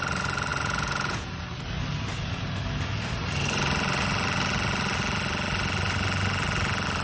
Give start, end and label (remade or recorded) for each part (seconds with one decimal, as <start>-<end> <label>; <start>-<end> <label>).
0.0-0.5 recorded; 0.5-1.3 remade; 1.3-7.0 recorded